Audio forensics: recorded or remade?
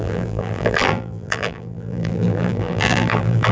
remade